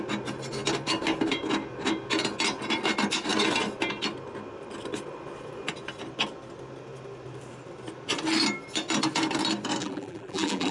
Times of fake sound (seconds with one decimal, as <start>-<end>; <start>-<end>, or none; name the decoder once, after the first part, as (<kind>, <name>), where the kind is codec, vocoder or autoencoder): 9.8-10.7 (vocoder, BigVGAN v2)

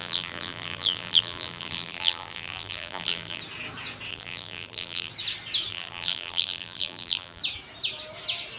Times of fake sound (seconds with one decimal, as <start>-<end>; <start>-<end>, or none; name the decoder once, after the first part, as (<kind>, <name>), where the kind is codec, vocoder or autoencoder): 0.0-3.4 (vocoder, BigVGAN v2); 4.1-5.1; 5.7-7.4

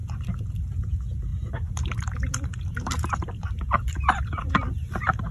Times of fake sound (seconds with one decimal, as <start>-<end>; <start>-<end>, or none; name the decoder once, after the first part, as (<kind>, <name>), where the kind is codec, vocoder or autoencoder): 0.0-0.7 (vocoder, BigVGAN v2); 1.3-4.5

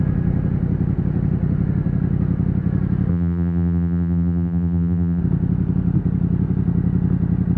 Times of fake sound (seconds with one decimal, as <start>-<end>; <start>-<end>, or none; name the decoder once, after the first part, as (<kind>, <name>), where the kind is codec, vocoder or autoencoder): 3.1-5.2 (vocoder, BigVGAN v2)

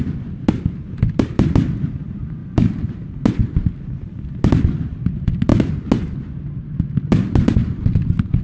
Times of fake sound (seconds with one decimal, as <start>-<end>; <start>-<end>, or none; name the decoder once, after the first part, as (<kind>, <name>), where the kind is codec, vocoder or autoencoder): 2.4-3.1 (vocoder, BigVGAN v2); 7.6-8.4

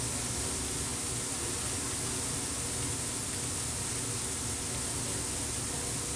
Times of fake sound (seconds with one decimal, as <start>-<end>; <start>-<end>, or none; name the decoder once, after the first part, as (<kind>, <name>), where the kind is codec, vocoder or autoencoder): none

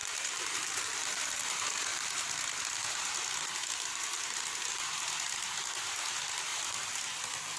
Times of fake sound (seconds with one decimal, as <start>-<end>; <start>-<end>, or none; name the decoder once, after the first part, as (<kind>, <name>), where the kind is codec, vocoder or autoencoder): 0.0-1.2 (vocoder, BigVGAN v2); 1.9-2.5; 3.6-4.8; 6.5-7.0